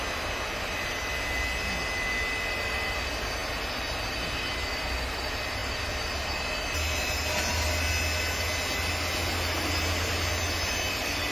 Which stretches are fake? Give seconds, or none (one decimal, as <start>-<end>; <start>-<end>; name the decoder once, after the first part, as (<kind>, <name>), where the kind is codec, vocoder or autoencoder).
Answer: none